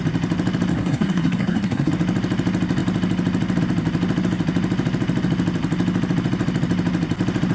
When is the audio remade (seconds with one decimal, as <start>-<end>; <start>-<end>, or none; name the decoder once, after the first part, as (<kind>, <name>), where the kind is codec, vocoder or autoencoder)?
0.7-1.9 (codec, SNAC)